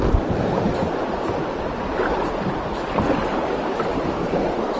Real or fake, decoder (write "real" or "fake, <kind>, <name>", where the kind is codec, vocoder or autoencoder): real